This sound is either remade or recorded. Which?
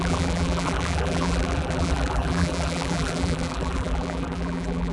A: remade